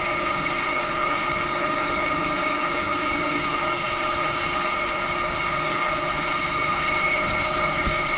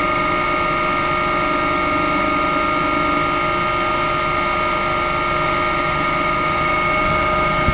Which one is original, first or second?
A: second